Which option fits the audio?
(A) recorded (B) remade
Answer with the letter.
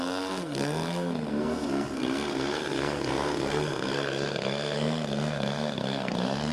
B